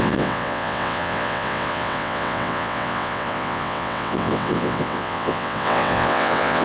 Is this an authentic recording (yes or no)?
no